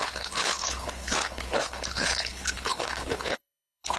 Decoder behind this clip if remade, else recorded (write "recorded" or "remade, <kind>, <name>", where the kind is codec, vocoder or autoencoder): remade, codec, HILCodec